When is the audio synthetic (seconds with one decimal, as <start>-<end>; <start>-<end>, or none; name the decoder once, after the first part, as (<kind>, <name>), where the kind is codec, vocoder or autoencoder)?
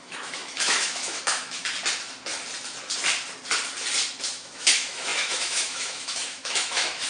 0.0-1.6 (autoencoder, DAC-VAE); 4.3-7.1